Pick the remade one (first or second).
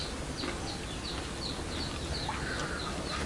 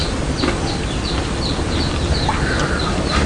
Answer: second